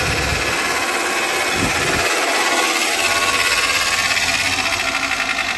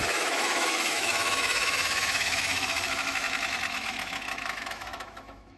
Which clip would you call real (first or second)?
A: first